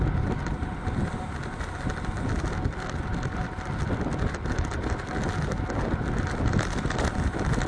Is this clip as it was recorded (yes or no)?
yes